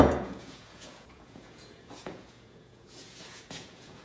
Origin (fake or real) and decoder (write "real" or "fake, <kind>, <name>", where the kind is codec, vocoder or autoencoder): fake, vocoder, Vocos